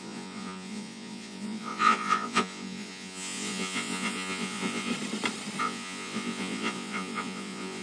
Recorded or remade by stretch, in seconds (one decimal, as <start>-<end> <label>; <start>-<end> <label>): 0.0-4.9 remade; 4.9-5.6 recorded; 5.6-7.8 remade